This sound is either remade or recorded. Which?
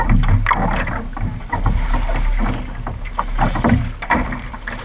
recorded